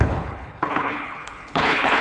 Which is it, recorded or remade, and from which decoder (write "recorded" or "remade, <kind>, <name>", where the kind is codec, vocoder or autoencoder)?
remade, codec, HILCodec